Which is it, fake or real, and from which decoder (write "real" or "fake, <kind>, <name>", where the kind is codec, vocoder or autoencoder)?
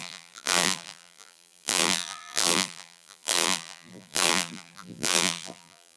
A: fake, vocoder, BigVGAN v2